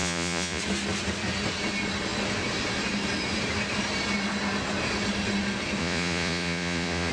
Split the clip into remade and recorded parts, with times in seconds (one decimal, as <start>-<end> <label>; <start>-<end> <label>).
0.0-0.6 remade; 0.6-5.8 recorded; 5.8-7.1 remade